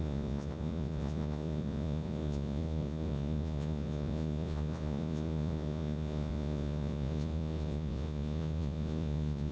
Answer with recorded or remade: remade